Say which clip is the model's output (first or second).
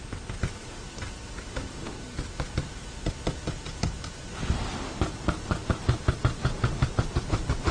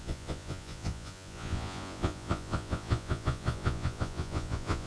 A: second